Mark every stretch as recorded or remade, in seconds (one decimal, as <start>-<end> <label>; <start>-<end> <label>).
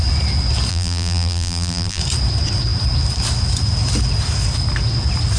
0.0-0.7 recorded; 0.7-2.0 remade; 2.0-5.4 recorded